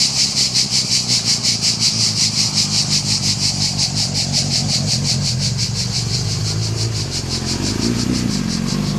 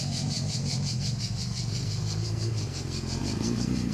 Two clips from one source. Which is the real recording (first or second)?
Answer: first